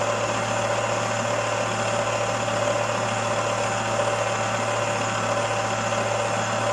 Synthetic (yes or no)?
no